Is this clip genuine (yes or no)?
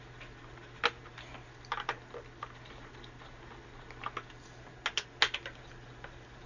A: yes